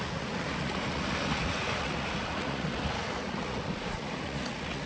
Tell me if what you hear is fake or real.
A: fake